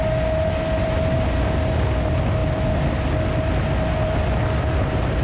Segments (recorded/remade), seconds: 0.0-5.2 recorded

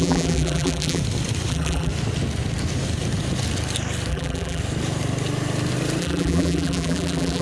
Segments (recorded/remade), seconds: 0.0-1.0 remade; 1.0-1.5 recorded; 1.5-1.9 remade; 1.9-4.1 recorded; 4.1-4.6 remade; 4.6-6.0 recorded; 6.0-7.4 remade

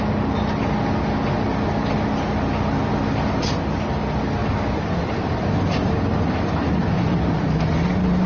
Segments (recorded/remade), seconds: 0.0-4.4 recorded; 4.4-5.5 remade; 5.5-8.3 recorded

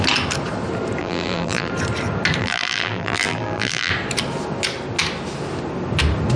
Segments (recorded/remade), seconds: 0.0-1.0 recorded; 1.0-1.7 remade; 1.7-2.4 recorded; 2.4-3.9 remade; 3.9-6.4 recorded